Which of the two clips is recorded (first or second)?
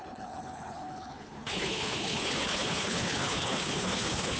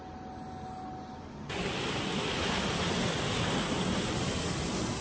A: second